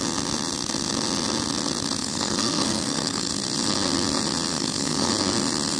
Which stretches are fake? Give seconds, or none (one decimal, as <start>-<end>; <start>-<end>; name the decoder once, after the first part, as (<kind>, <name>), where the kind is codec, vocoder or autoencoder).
2.0-3.3 (codec, SNAC); 4.5-5.1